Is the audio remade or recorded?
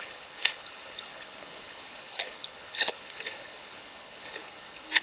remade